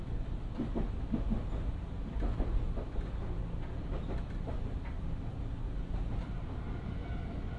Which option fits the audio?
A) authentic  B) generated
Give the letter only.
A